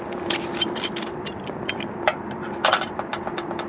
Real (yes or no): yes